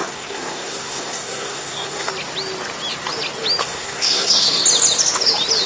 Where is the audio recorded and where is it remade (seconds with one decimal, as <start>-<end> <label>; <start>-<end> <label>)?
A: 0.0-2.1 remade; 2.1-3.6 recorded; 3.6-4.6 remade; 4.6-5.7 recorded